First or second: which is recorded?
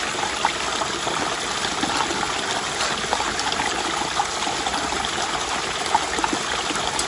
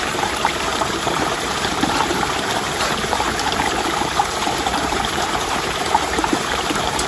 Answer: first